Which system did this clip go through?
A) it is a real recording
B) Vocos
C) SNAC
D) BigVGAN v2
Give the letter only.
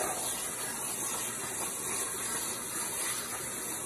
A